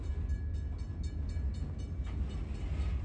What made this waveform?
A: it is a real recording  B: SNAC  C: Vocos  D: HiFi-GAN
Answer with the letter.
A